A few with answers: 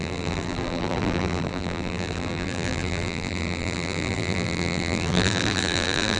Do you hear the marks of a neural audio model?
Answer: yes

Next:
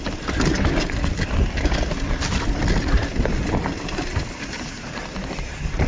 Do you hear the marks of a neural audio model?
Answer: no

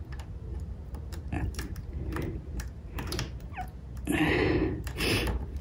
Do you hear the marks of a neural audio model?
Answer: yes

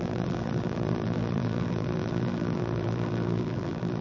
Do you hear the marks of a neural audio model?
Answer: yes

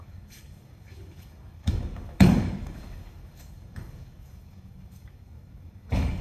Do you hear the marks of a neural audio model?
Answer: yes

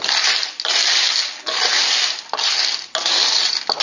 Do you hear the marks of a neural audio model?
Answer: no